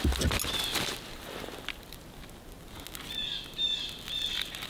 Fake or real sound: real